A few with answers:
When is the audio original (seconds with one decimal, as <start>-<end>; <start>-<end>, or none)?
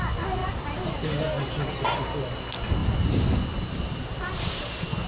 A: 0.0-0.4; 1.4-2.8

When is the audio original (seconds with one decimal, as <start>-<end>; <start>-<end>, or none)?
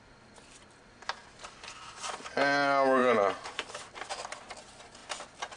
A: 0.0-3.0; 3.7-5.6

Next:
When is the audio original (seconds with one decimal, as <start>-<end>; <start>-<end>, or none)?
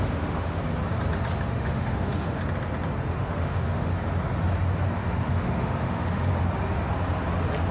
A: 0.6-1.4; 2.4-3.1; 3.9-5.3; 6.3-7.7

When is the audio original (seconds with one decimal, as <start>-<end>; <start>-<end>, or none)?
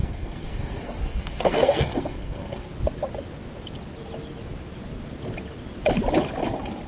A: 2.7-6.9